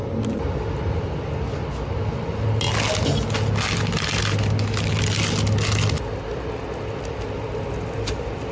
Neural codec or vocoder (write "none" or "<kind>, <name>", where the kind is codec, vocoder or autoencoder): none